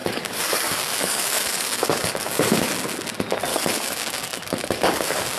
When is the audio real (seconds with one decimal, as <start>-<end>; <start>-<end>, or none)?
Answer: 2.7-3.5